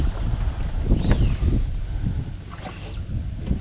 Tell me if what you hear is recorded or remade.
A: recorded